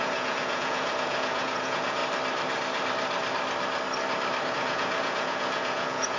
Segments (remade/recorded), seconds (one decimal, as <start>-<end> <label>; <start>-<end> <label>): 0.0-2.0 remade; 2.0-4.5 recorded; 4.5-6.2 remade